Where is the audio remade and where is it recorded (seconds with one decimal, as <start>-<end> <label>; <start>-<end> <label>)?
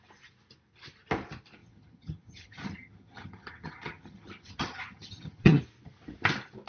0.0-1.6 recorded; 1.6-5.6 remade; 5.6-6.7 recorded